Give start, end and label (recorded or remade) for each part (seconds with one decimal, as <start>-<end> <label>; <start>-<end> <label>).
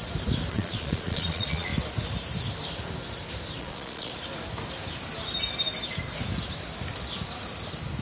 0.0-0.5 recorded; 0.5-1.7 remade; 1.7-3.6 recorded; 3.6-4.1 remade; 4.1-8.0 recorded